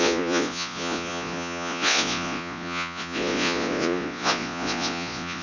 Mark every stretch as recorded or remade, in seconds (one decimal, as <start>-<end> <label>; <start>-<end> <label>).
0.0-5.4 remade